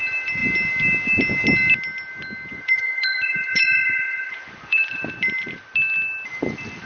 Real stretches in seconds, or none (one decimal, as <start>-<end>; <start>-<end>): 0.0-2.5; 5.1-6.9